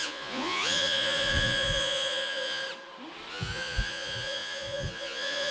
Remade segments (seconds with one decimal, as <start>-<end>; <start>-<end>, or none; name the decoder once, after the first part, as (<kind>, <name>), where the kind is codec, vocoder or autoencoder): 0.0-2.6 (vocoder, Vocos); 3.3-5.5